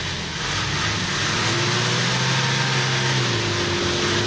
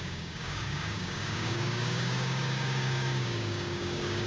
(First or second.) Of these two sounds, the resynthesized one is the second